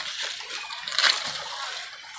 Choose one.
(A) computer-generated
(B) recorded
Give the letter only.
B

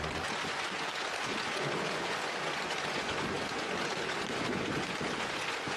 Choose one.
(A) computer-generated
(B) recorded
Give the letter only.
A